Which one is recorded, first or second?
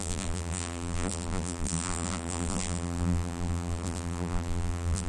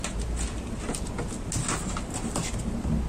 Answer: second